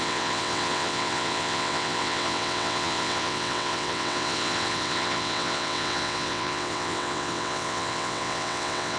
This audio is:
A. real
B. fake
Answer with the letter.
B